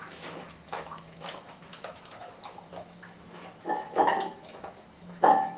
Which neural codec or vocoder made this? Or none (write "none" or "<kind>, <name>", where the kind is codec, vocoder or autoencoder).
autoencoder, DAC-VAE